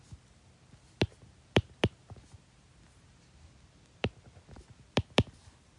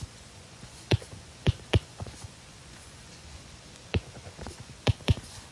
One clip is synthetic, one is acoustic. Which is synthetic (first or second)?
second